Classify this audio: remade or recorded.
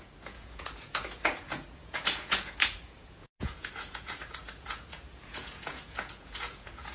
remade